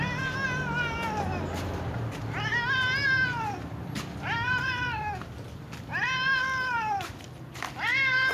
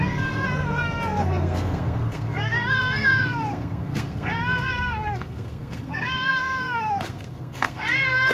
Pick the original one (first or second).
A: first